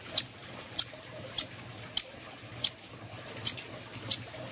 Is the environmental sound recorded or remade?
recorded